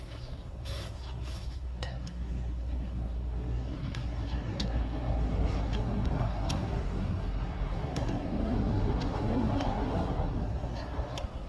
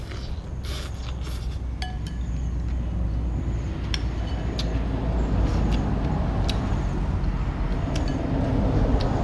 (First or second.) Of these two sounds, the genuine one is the second